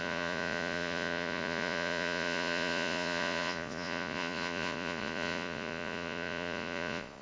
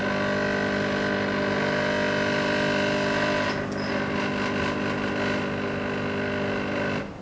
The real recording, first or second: second